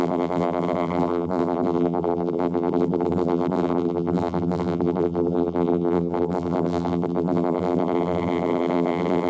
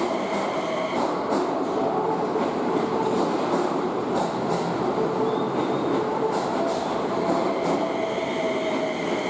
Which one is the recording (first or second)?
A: second